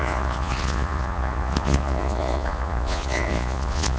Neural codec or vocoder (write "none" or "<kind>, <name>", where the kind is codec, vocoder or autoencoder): vocoder, Vocos